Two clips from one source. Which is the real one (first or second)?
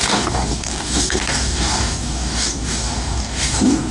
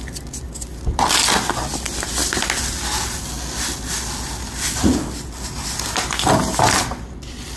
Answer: second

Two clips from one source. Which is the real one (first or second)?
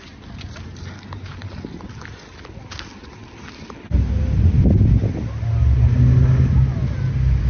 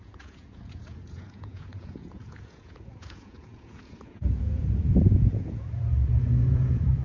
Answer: first